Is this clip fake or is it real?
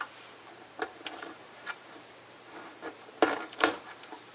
fake